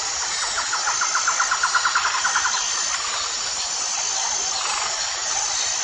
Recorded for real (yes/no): yes